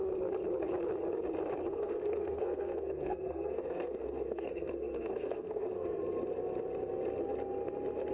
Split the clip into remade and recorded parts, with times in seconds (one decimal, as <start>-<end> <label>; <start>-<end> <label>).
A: 0.0-1.7 recorded; 1.7-6.0 remade; 6.0-8.1 recorded